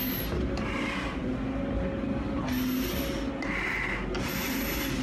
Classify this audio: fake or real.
real